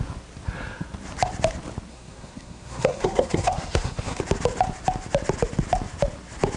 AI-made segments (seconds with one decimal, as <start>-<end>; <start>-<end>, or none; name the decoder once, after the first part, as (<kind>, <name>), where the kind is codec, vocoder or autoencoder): 1.9-4.2 (codec, SNAC)